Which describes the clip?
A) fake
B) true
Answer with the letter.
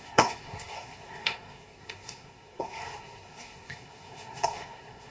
A